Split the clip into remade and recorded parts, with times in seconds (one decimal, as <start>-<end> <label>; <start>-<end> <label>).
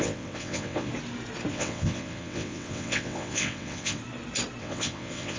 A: 0.0-0.9 remade; 0.9-1.5 recorded; 1.5-4.0 remade; 4.0-4.6 recorded; 4.6-5.4 remade